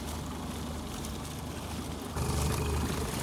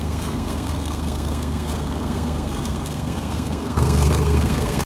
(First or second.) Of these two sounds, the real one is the first